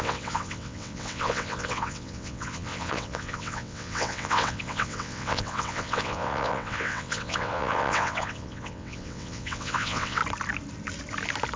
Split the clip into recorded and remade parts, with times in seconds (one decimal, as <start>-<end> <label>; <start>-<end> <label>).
0.0-10.2 remade; 10.2-11.6 recorded